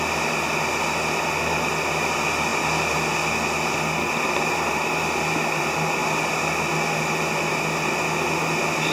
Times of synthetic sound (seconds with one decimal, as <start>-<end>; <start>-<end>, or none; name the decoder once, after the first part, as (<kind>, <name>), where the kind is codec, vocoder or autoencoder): none